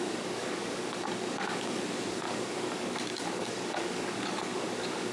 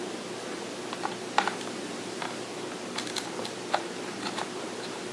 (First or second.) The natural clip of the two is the second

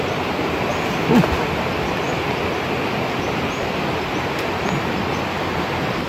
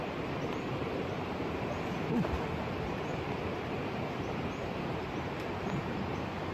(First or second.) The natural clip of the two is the first